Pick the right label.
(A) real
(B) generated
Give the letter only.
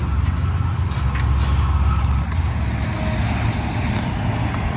A